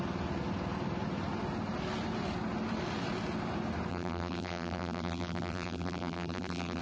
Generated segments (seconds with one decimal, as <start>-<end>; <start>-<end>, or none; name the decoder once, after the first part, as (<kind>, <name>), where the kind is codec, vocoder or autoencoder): 3.9-6.8 (vocoder, BigVGAN v2)